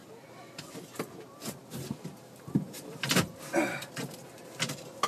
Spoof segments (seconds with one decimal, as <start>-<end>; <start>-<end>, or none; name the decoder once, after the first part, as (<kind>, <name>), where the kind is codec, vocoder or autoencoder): none